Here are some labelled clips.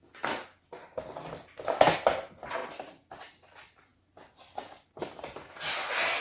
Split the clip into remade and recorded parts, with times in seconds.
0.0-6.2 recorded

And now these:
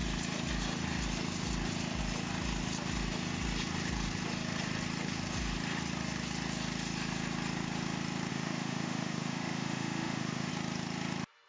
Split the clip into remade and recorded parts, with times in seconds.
0.0-8.3 recorded; 8.3-10.5 remade; 10.5-11.5 recorded